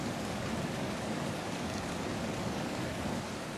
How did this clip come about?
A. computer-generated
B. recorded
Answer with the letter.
A